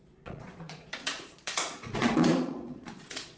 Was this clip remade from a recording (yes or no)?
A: yes